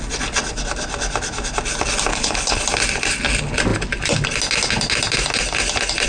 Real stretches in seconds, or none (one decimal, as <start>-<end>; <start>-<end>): 0.0-2.1; 2.6-6.1